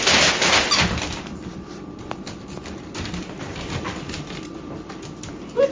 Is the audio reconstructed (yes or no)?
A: no